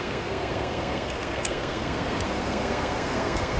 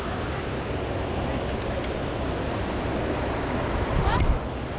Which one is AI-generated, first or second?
first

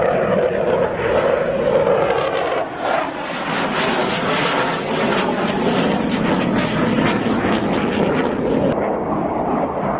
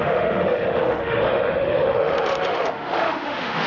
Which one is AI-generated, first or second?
second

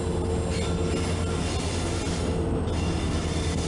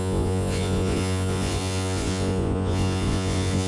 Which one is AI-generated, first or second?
second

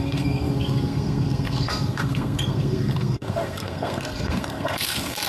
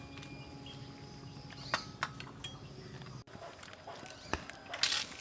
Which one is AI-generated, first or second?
first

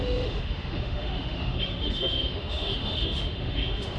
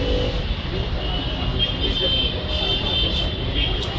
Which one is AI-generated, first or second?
first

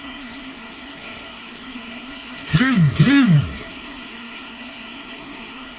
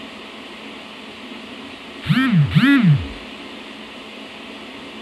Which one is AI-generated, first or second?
first